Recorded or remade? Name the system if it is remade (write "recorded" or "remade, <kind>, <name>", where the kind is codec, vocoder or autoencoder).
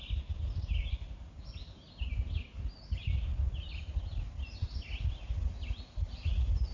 recorded